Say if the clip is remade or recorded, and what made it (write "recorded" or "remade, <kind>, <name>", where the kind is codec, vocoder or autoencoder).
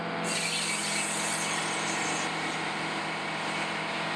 recorded